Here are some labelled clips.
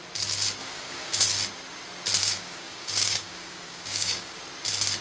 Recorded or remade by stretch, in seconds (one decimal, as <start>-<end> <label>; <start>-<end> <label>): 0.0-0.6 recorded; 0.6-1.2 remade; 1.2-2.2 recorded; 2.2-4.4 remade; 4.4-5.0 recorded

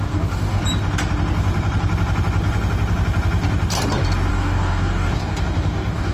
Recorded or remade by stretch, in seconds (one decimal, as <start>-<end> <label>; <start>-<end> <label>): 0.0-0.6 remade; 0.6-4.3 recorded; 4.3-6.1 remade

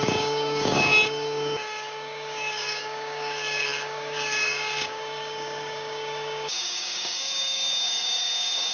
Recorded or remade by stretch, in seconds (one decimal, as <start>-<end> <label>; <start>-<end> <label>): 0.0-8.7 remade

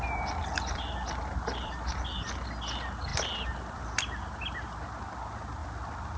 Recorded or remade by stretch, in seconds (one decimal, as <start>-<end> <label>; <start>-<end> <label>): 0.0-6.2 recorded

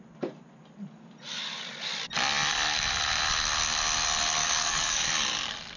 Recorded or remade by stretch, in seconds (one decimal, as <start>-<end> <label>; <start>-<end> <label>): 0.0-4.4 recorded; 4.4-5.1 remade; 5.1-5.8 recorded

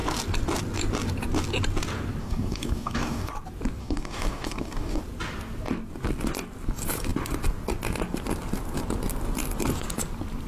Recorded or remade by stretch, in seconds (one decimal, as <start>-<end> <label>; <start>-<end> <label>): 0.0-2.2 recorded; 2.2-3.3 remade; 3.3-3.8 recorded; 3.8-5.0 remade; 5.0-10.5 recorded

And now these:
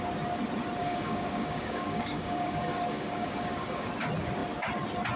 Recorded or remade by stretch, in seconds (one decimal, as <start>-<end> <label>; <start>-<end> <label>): 0.0-0.8 recorded; 0.8-3.9 remade; 3.9-5.2 recorded